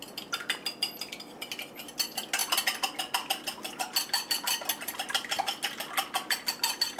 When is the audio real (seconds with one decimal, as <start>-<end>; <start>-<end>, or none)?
0.0-7.0